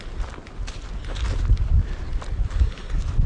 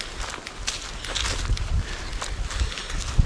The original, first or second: second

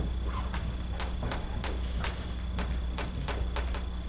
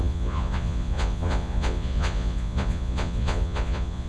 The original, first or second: first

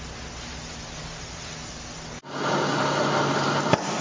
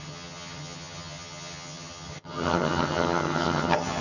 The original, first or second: first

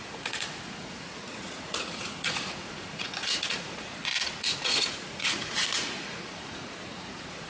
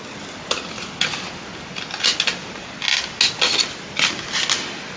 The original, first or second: second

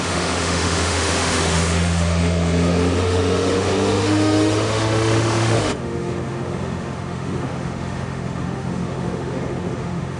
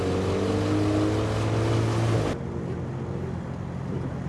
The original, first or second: second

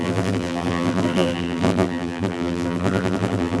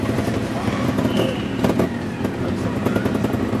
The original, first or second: second